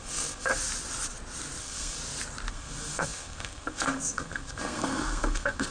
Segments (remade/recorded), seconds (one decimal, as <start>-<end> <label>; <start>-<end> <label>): 0.0-0.5 remade; 0.5-1.6 recorded; 1.6-2.0 remade; 2.0-2.5 recorded; 2.5-5.7 remade